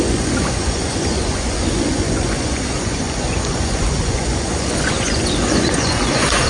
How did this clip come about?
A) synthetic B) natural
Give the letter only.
A